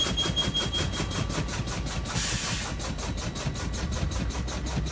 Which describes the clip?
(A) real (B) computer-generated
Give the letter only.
A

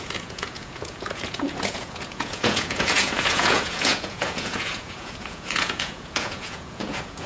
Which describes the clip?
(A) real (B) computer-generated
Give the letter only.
B